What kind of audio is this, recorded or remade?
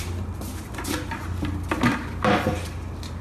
recorded